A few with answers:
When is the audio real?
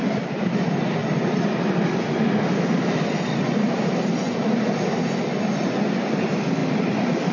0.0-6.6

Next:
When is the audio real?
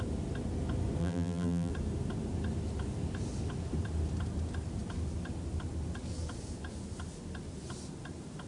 0.0-1.0; 1.7-8.5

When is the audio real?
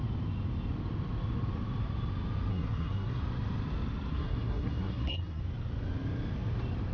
0.0-2.5; 3.2-4.1; 5.4-6.9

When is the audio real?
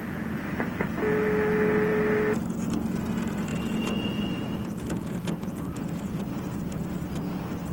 0.0-3.5; 6.2-7.7